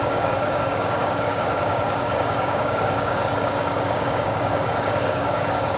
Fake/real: fake